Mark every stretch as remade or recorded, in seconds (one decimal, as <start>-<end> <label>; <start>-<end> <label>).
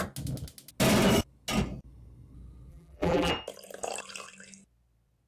0.0-2.7 recorded; 2.7-3.3 remade; 3.3-5.3 recorded